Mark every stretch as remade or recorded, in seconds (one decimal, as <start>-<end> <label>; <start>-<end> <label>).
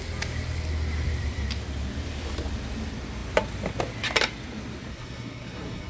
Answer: 0.0-4.9 recorded; 4.9-5.9 remade